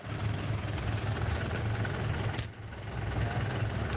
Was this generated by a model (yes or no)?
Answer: no